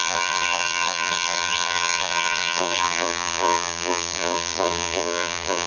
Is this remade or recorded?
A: remade